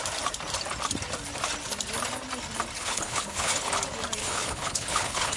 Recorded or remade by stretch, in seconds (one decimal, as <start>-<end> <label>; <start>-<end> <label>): 0.0-2.8 recorded; 2.8-3.7 remade; 3.7-4.2 recorded; 4.2-5.4 remade